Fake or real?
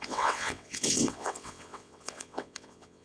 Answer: fake